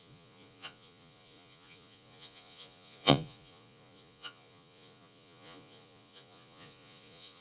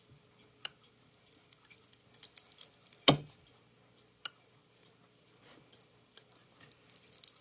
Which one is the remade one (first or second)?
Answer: first